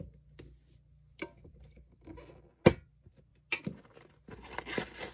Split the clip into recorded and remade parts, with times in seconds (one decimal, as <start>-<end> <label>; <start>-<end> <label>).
0.0-5.1 recorded